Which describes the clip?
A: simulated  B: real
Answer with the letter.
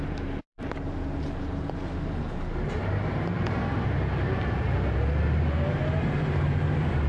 A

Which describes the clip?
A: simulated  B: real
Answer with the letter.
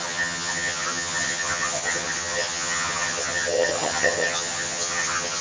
A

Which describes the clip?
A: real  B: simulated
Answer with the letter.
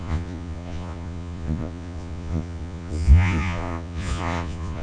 B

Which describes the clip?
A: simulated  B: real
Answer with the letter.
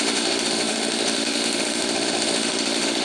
A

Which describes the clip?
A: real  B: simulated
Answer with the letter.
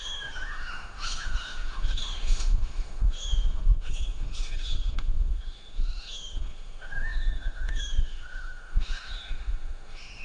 B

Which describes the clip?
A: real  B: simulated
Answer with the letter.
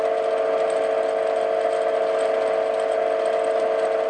A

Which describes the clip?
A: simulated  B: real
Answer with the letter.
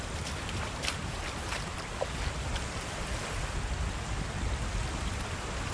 B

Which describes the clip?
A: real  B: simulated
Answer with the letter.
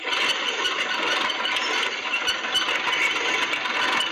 A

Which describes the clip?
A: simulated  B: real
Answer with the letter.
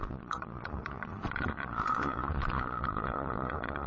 A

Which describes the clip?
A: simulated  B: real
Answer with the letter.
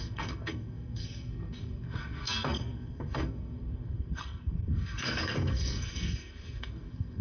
A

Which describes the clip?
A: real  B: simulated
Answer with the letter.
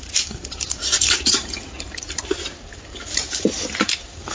B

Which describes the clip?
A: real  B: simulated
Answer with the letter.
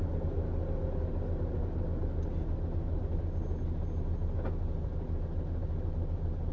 A